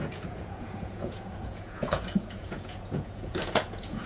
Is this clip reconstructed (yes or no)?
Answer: yes